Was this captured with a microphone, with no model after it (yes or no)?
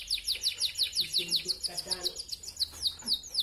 yes